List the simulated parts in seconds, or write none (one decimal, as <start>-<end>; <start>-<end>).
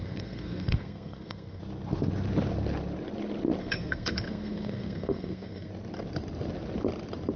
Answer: 0.0-1.6; 3.6-5.7